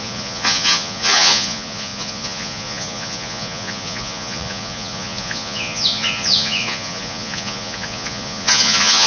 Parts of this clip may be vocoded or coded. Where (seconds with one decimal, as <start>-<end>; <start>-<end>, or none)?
0.0-9.1